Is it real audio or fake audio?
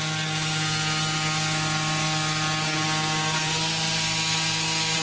real